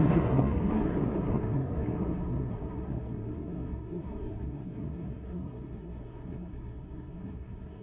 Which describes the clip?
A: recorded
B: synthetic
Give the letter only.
B